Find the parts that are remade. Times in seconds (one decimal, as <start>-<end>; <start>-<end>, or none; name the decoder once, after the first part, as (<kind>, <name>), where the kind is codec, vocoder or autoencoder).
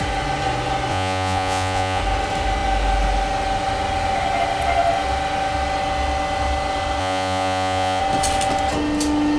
0.9-2.0 (vocoder, Vocos); 7.0-8.0